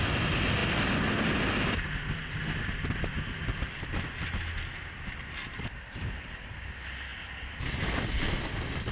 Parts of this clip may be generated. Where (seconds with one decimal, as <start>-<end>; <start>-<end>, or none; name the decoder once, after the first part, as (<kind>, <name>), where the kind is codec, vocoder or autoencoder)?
none